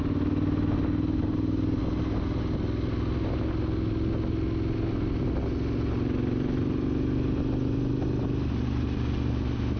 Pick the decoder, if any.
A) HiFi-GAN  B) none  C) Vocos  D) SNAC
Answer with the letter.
B